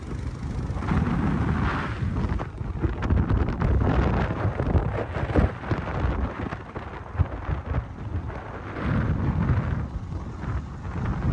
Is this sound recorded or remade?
recorded